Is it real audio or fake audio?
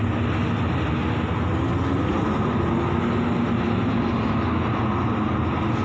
real